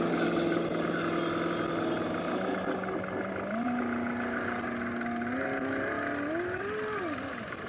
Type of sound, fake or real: real